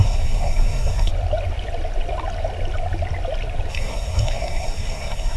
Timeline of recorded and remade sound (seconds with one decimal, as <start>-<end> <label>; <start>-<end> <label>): 0.0-1.1 remade; 1.1-3.7 recorded; 3.7-5.4 remade